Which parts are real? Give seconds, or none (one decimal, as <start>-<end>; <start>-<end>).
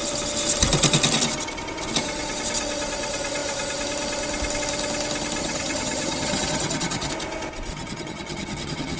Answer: 0.0-5.4; 7.1-7.7